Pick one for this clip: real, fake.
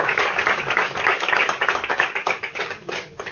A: fake